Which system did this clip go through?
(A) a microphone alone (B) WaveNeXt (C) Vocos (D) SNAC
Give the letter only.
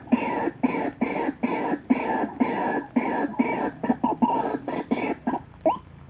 A